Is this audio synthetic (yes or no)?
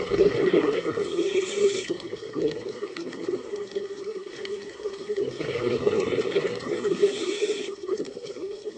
yes